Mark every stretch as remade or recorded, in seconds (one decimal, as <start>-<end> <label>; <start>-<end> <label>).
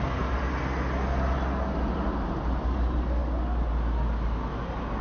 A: 0.0-5.0 recorded